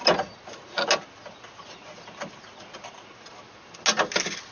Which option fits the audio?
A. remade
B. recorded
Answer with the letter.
B